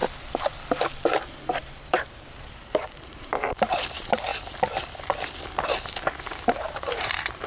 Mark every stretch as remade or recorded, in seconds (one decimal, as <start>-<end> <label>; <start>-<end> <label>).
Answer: 0.0-1.5 recorded; 1.5-4.3 remade; 4.3-6.7 recorded; 6.7-7.5 remade